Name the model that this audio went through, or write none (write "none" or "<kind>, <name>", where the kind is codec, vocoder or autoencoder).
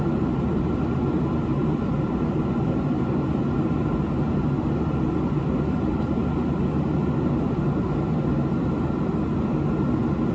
none